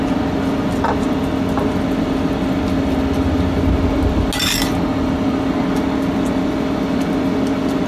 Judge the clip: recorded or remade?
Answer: recorded